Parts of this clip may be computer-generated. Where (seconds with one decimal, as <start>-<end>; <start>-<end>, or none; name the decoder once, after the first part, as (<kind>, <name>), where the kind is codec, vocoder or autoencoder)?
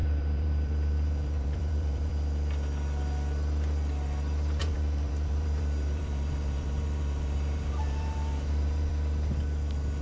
0.0-2.1 (vocoder, BigVGAN v2); 4.6-8.9